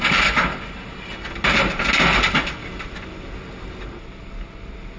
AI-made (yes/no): no